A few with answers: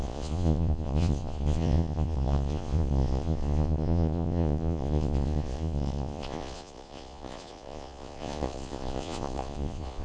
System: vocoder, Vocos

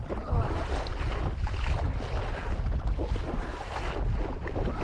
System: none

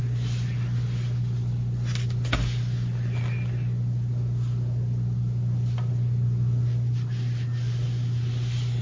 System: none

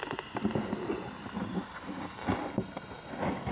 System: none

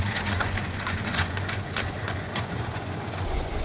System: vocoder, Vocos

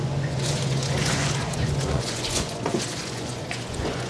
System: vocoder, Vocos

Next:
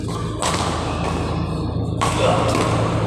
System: none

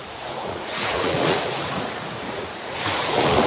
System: vocoder, Vocos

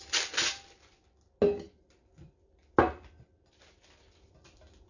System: none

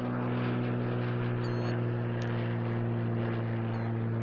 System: none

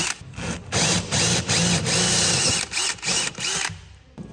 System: none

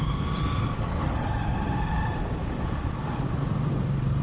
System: none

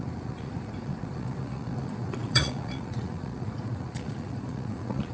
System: vocoder, Vocos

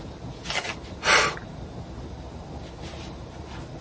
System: none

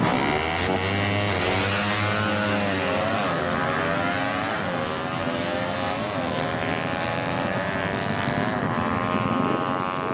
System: none